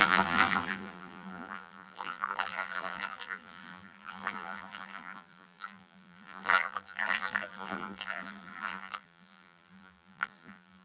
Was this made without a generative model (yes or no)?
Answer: no